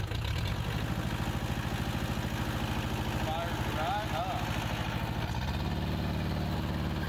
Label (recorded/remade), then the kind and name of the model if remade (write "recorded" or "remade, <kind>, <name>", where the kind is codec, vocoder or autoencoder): recorded